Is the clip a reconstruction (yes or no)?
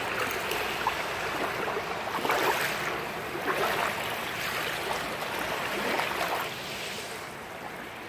no